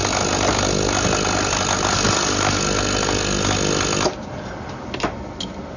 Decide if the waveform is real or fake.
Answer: real